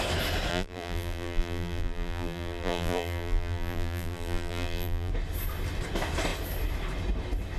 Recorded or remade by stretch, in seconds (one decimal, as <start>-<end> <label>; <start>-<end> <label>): 0.0-0.5 recorded; 0.5-5.1 remade; 5.1-7.6 recorded